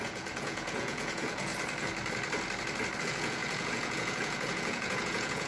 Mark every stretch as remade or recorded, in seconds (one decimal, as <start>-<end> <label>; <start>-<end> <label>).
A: 0.0-1.5 remade; 1.5-3.0 recorded; 3.0-5.5 remade